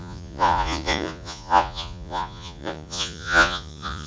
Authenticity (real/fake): fake